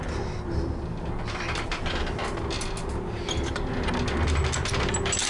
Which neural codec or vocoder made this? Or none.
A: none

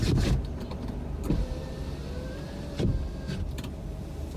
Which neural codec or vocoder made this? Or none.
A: none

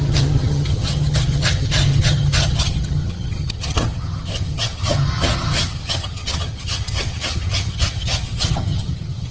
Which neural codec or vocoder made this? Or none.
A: vocoder, HiFi-GAN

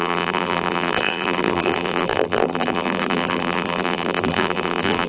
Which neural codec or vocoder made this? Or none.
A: vocoder, BigVGAN v2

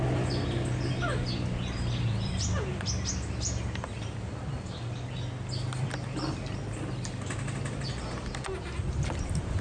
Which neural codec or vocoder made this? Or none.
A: none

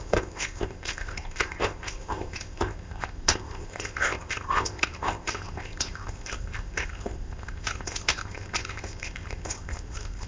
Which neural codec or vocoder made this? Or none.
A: codec, ZipCodec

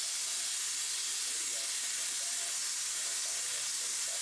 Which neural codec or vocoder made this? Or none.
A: none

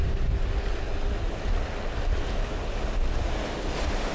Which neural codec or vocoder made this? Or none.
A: none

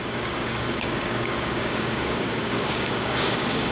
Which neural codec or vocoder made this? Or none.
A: codec, DAC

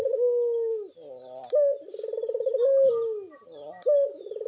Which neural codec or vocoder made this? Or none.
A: none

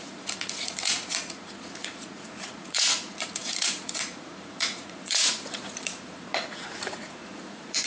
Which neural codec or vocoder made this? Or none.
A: vocoder, Vocos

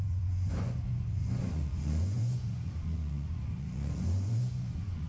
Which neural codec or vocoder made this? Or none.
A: vocoder, Vocos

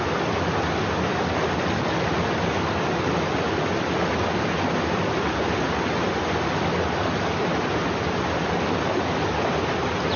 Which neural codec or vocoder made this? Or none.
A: none